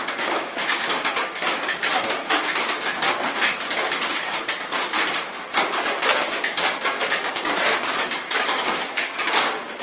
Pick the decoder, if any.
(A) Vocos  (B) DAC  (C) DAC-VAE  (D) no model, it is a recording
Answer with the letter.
B